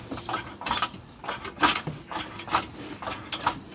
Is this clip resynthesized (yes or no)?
no